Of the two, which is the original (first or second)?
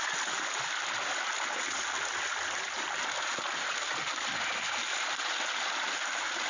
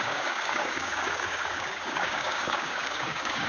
first